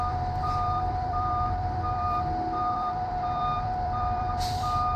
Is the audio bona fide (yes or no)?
no